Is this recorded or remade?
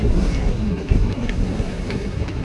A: remade